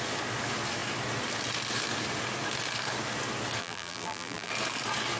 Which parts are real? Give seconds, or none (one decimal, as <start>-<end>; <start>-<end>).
0.0-3.6; 4.5-5.2